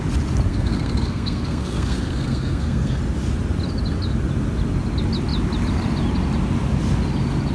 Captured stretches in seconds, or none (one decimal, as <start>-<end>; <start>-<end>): 0.0-0.5; 3.0-7.5